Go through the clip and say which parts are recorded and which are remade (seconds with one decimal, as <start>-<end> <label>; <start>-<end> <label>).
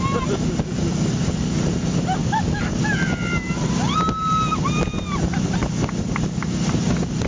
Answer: 0.0-2.2 recorded; 2.2-2.8 remade; 2.8-7.3 recorded